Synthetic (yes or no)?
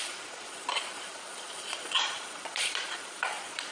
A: yes